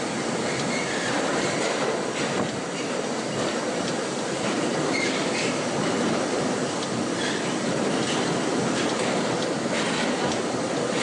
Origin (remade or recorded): remade